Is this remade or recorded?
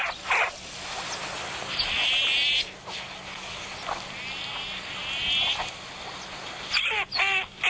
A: recorded